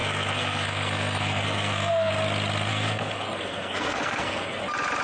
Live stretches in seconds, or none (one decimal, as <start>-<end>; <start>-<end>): 2.1-2.7; 4.6-5.0